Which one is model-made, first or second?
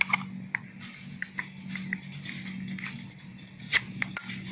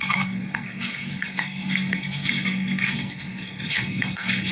second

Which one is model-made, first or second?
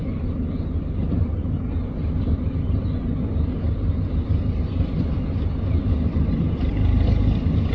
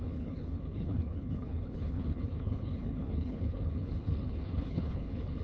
second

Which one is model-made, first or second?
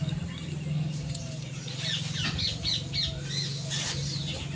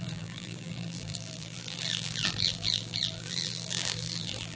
second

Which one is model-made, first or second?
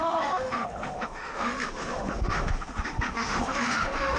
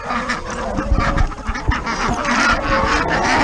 first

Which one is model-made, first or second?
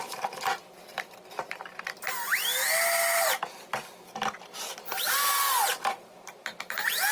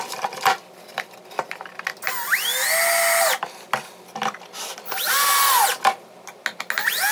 first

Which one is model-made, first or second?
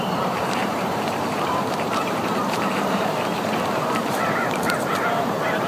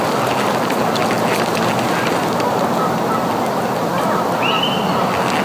first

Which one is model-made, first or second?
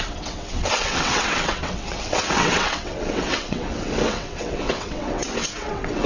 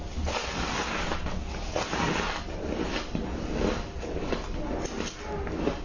first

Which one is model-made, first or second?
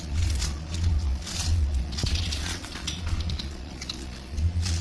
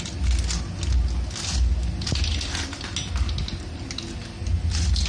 first